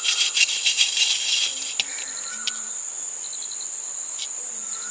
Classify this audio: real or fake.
real